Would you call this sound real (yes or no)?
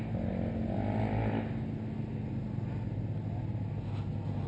yes